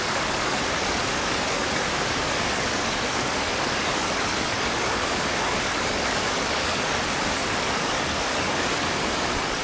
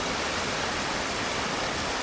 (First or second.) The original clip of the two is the second